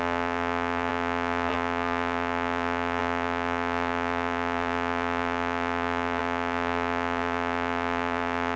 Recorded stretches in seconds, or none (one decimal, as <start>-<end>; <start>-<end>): none